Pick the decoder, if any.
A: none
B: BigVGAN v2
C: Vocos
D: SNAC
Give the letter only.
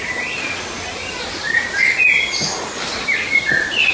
A